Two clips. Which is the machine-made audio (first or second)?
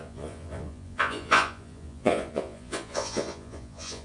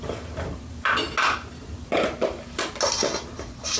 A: first